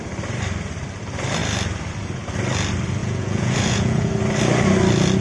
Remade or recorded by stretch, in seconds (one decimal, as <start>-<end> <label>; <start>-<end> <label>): 0.0-3.0 recorded; 3.0-4.1 remade; 4.1-5.2 recorded